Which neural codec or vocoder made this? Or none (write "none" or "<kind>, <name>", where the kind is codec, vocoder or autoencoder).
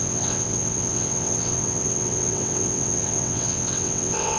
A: vocoder, WaveNeXt